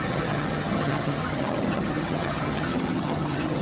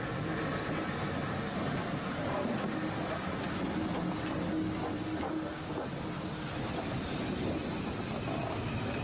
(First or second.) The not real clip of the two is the first